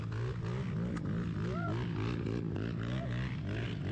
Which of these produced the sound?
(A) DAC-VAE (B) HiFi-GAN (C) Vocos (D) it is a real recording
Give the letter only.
D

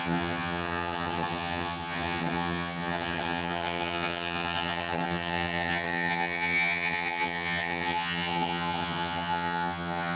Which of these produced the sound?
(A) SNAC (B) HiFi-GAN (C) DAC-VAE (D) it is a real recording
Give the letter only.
B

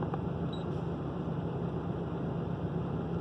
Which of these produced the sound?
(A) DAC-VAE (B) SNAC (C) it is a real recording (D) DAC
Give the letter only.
C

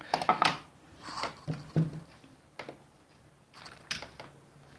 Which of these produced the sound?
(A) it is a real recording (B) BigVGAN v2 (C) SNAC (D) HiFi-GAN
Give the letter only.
A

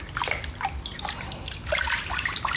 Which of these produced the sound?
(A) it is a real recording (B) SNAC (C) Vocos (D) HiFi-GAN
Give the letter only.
A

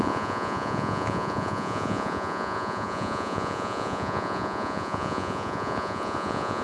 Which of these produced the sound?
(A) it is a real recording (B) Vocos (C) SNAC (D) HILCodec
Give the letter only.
B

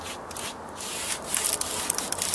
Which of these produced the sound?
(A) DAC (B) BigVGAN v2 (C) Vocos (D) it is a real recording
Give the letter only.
D